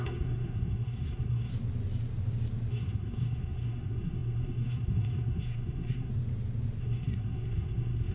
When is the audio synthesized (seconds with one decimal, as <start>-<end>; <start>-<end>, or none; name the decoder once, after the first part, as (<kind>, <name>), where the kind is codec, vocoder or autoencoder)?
0.0-1.5 (codec, SNAC); 2.7-6.1; 6.8-8.1